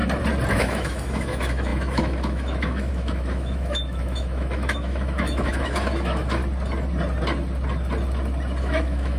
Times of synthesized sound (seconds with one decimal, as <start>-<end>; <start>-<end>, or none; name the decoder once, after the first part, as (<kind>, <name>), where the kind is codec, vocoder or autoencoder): 0.5-6.4 (autoencoder, DAC-VAE); 8.6-9.2